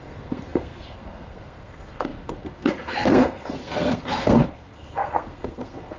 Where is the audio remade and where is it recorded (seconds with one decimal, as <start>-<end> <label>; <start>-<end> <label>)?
0.0-6.0 remade